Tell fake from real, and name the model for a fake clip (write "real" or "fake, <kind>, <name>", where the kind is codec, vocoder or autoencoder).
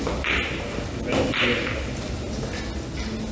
real